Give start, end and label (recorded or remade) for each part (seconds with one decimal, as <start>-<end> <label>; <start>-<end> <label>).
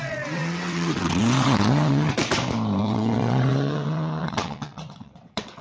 0.0-2.3 remade; 2.3-2.8 recorded; 2.8-5.6 remade